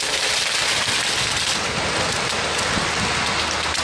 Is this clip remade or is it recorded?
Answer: recorded